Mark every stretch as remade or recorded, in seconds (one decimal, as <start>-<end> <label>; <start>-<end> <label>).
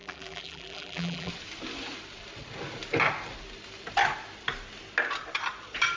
0.0-1.3 remade; 1.3-6.0 recorded